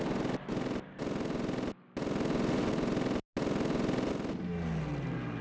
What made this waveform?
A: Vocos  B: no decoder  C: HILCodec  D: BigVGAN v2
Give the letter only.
B